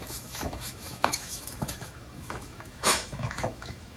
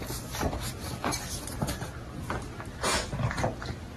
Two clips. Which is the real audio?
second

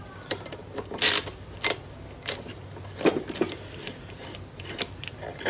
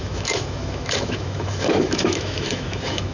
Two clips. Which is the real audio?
first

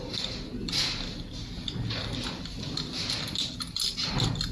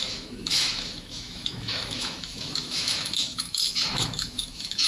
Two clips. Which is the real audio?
first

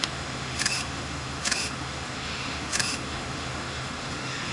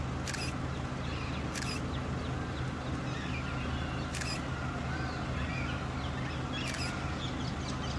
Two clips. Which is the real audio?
second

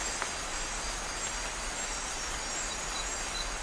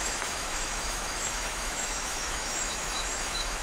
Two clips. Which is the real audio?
first